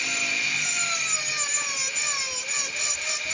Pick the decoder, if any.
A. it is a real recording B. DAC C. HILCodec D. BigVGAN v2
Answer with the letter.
A